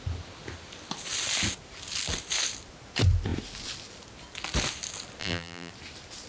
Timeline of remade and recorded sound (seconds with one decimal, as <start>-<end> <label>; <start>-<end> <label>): 0.0-5.2 recorded; 5.2-5.7 remade; 5.7-6.3 recorded